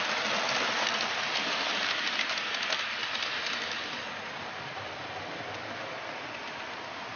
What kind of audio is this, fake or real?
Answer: real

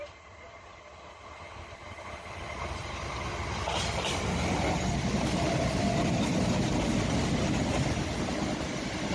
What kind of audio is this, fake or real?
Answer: real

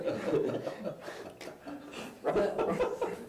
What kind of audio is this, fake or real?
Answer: real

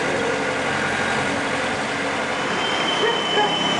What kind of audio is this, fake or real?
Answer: real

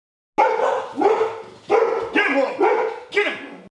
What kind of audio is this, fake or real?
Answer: real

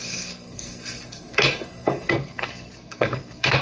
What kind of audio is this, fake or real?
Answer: fake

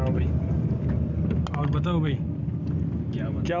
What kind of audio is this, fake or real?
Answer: real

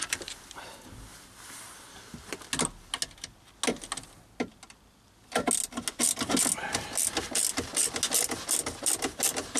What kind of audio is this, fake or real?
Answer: real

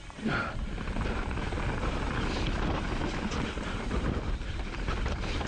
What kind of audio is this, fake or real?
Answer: real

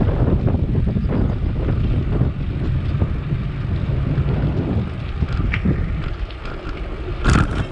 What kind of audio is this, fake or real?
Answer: real